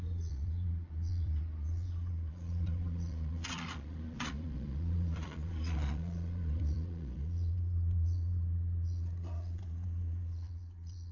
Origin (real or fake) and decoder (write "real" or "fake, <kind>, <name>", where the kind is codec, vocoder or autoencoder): fake, vocoder, Vocos